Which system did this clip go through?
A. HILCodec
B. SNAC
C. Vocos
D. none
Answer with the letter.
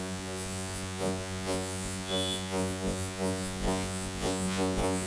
C